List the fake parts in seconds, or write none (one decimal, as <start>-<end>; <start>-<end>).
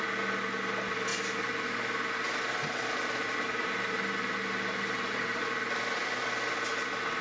none